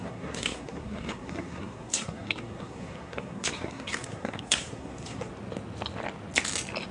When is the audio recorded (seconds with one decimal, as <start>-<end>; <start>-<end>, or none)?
5.3-6.9